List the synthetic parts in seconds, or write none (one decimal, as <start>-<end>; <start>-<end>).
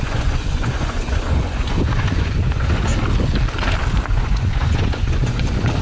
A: 0.0-2.9; 4.1-5.8